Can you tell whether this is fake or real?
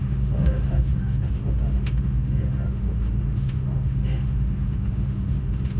fake